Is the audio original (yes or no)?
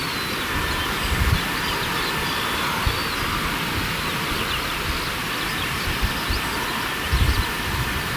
yes